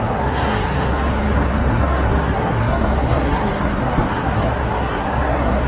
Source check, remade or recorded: remade